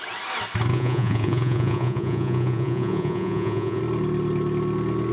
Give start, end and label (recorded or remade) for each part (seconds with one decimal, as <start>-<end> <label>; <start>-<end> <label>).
0.0-0.7 recorded; 0.7-3.8 remade; 3.8-5.1 recorded